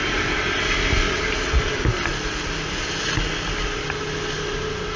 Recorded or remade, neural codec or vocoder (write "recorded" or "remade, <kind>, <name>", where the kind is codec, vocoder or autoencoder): recorded